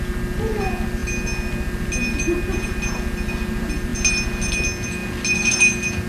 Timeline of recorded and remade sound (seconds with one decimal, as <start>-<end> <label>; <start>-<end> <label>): 0.0-6.1 recorded